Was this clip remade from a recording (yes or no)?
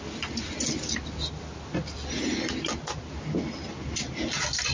no